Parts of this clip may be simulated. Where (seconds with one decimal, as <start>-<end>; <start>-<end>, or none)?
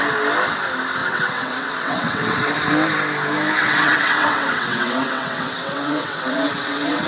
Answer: 1.0-2.5; 3.6-7.1